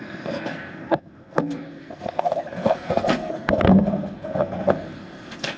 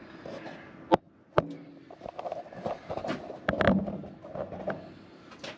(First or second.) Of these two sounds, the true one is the second